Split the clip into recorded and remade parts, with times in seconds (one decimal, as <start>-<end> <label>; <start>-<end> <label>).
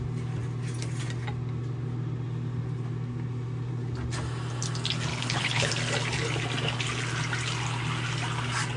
0.0-5.1 recorded; 5.1-5.7 remade; 5.7-8.8 recorded